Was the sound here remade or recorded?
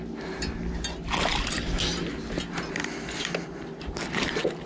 recorded